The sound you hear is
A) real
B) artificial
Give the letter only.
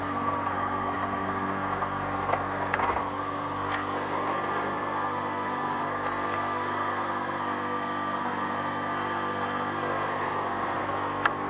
B